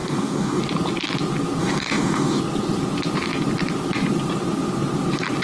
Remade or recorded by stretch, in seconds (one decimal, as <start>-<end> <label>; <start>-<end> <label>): 0.0-0.6 remade; 0.6-1.6 recorded; 1.6-2.4 remade; 2.4-5.4 recorded